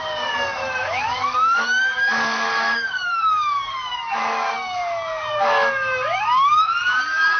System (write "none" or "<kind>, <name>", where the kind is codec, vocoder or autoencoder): codec, DAC